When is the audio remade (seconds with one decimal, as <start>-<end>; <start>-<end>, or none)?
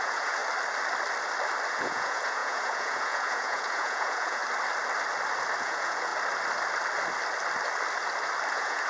0.0-0.4; 1.7-4.4; 5.6-6.1; 8.5-8.9